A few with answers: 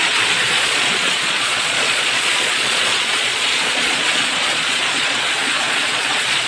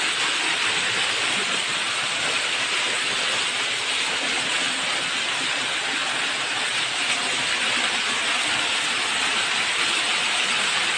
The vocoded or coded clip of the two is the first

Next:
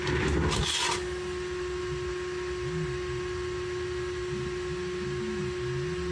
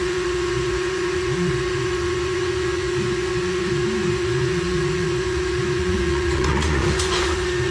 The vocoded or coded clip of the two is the second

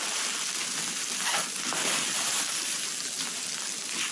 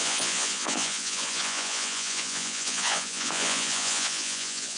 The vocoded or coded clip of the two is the second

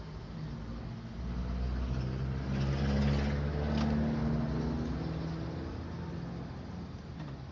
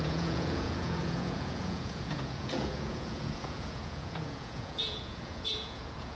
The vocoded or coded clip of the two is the second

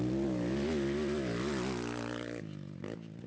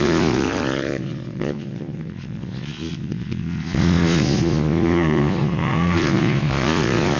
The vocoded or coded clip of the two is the second